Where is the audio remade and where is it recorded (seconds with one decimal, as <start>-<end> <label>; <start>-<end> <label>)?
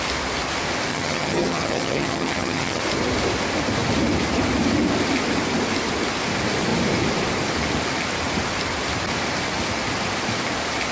0.0-0.9 recorded; 0.9-2.8 remade; 2.8-10.9 recorded